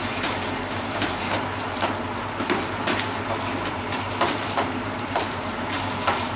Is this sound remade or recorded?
remade